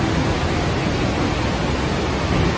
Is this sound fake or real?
real